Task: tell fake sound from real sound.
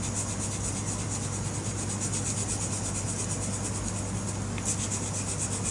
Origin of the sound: real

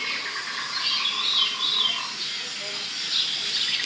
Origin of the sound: real